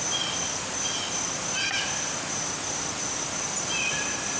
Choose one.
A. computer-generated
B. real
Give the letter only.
B